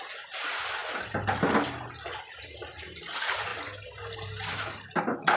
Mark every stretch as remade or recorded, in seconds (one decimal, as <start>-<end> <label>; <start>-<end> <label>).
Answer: 0.0-5.4 recorded